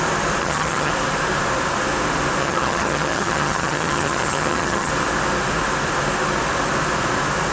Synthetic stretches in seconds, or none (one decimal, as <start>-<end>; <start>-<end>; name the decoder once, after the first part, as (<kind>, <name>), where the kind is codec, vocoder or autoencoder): 0.4-0.9 (vocoder, HiFi-GAN); 2.4-4.9